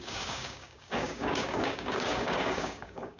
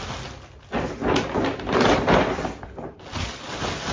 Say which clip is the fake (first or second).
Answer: first